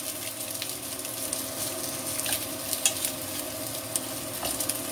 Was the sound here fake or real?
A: real